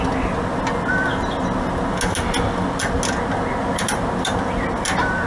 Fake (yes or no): no